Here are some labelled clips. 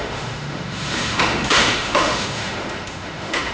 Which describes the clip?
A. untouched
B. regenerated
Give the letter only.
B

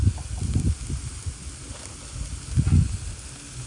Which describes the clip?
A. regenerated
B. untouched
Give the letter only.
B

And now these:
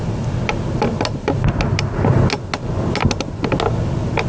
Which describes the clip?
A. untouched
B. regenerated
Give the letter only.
A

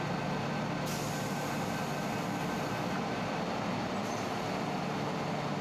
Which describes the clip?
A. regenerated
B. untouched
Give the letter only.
B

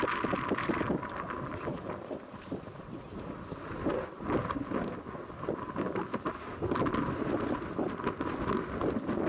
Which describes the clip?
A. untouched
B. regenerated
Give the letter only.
A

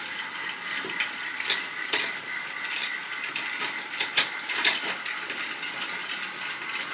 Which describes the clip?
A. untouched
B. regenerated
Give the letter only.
A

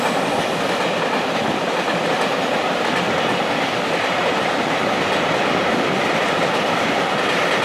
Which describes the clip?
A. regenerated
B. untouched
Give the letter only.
B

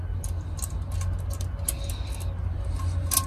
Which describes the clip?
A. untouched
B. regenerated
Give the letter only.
A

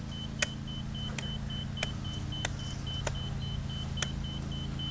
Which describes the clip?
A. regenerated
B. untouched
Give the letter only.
B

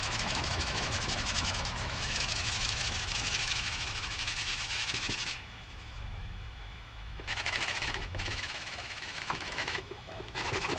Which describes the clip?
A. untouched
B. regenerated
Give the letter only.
B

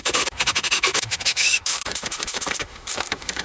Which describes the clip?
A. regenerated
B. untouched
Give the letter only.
A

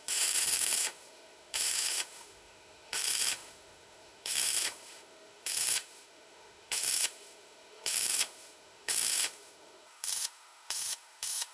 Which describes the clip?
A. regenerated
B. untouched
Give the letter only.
A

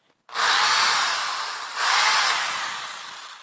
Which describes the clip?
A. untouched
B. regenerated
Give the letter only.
A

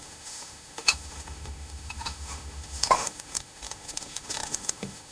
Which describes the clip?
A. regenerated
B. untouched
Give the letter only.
A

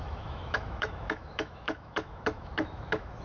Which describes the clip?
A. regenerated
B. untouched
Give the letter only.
A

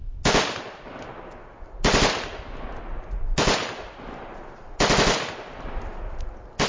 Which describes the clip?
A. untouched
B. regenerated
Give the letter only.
A